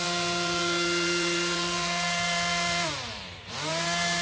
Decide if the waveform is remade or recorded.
remade